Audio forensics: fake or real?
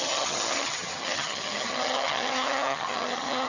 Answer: fake